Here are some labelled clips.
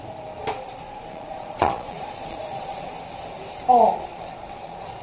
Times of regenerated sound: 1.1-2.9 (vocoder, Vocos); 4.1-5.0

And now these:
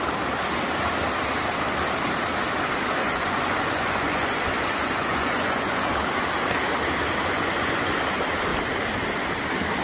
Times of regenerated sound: 3.0-5.9 (vocoder, Vocos); 7.3-8.0

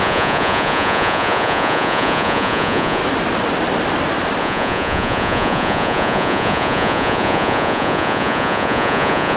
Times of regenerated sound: 0.0-3.0 (vocoder, Vocos); 4.4-9.4

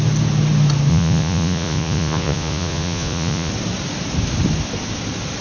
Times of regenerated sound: 0.9-3.5 (vocoder, Vocos)